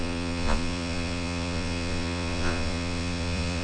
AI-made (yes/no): yes